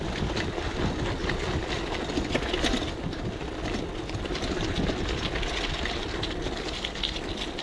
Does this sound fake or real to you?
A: real